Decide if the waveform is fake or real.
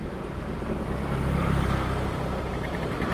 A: fake